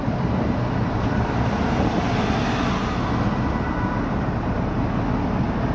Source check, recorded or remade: recorded